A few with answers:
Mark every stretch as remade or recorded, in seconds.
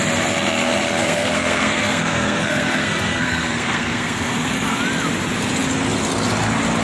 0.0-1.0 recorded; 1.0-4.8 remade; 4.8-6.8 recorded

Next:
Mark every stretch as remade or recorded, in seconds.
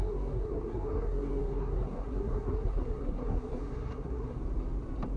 0.0-4.4 remade; 4.4-5.2 recorded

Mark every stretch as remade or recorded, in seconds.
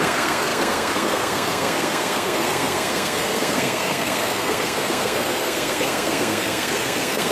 0.0-7.3 remade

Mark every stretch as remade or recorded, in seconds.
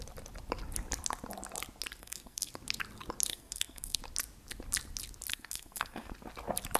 0.0-2.0 recorded; 2.0-2.5 remade; 2.5-3.3 recorded; 3.3-4.0 remade; 4.0-5.3 recorded; 5.3-6.1 remade; 6.1-6.8 recorded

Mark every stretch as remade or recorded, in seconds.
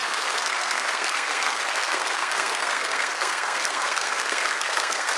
0.0-5.2 remade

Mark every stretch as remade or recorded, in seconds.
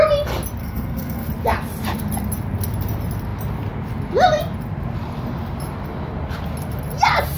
0.0-0.6 recorded; 0.6-1.3 remade; 1.3-7.4 recorded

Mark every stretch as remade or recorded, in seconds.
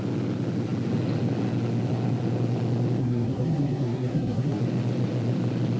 0.0-3.0 recorded; 3.0-4.6 remade; 4.6-5.8 recorded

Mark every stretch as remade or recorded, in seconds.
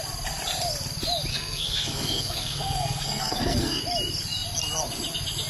0.0-1.3 recorded; 1.3-3.8 remade; 3.8-5.5 recorded